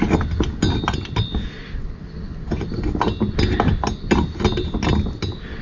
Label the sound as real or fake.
real